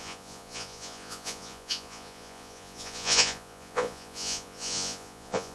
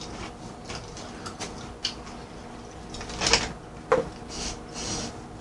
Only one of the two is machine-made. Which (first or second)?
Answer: first